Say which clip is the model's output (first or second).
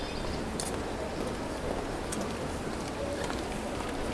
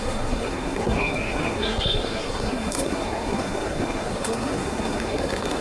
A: second